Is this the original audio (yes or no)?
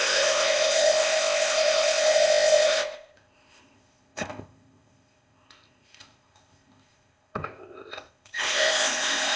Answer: no